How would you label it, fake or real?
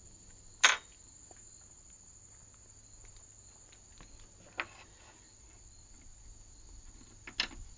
real